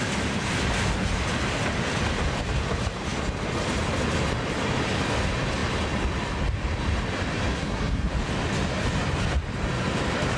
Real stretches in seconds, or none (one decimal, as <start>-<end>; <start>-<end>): 0.0-7.5; 8.1-10.4